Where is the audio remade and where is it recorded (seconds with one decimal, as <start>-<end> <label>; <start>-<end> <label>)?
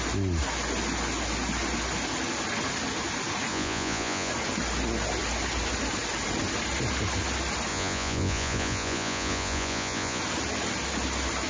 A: 0.0-3.5 recorded; 3.5-4.3 remade; 4.3-7.7 recorded; 7.7-10.2 remade; 10.2-11.5 recorded